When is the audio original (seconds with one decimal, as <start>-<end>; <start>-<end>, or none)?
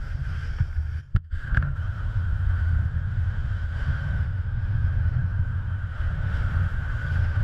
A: 0.5-1.1